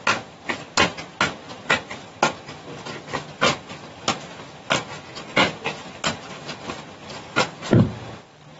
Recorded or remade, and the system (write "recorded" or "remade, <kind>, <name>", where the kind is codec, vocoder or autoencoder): recorded